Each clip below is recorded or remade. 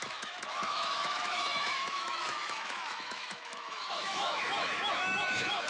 remade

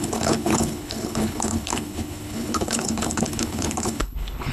remade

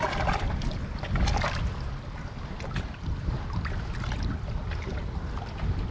recorded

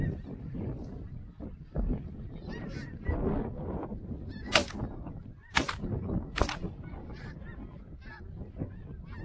recorded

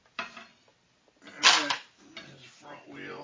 recorded